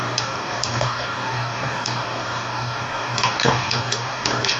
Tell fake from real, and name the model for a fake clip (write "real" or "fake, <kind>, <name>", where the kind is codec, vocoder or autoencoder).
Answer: fake, codec, DAC